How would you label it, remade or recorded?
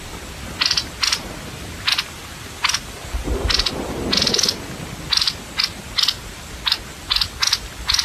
recorded